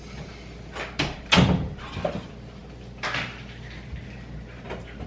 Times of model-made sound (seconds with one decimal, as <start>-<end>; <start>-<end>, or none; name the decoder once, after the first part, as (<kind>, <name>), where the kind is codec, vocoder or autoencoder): none